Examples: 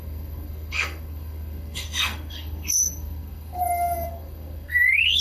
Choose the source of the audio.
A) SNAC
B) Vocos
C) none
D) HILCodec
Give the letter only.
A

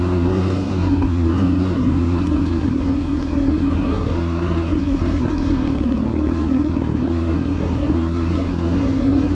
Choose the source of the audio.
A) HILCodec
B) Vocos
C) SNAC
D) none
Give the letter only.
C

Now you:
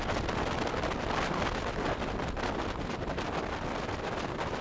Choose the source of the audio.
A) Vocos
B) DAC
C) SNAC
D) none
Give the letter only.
D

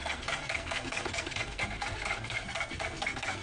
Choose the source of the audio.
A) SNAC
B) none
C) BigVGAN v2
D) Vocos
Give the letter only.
A